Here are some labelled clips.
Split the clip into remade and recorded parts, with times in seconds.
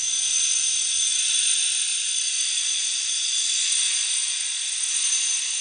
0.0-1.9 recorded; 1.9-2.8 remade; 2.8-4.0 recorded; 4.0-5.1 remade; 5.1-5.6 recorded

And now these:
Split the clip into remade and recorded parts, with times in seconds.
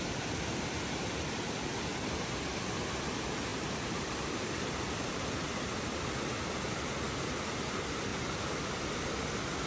0.0-3.5 recorded; 3.5-5.5 remade; 5.5-9.7 recorded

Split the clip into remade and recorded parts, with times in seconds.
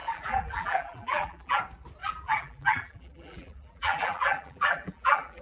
0.0-1.6 remade; 1.6-2.0 recorded; 2.0-5.4 remade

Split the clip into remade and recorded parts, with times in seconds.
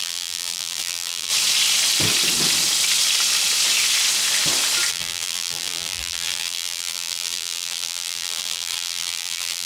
0.0-1.3 remade; 1.3-4.9 recorded; 4.9-9.7 remade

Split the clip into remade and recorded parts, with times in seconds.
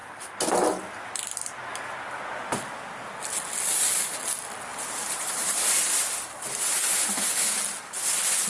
0.0-4.7 recorded; 4.7-7.5 remade; 7.5-8.5 recorded